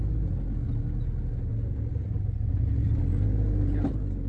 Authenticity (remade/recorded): recorded